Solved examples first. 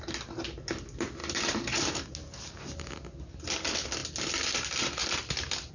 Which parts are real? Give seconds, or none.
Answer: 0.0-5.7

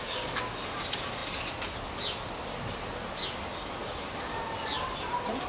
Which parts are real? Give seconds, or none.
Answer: 0.5-5.5

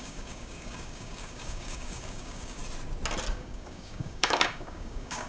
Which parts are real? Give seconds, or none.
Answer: 2.6-3.3

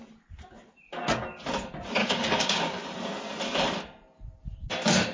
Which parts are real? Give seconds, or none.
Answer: 0.0-2.0; 2.8-5.1

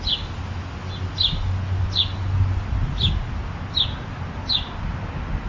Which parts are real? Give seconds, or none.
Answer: 0.0-5.5

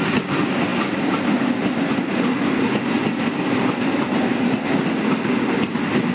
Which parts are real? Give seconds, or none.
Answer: 0.0-6.1

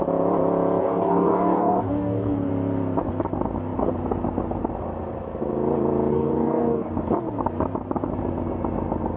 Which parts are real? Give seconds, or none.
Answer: 0.0-0.8; 2.5-6.1; 6.9-9.2